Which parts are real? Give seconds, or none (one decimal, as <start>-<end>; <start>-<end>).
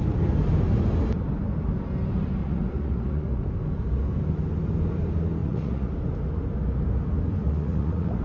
0.0-2.4; 3.4-5.4; 5.9-7.4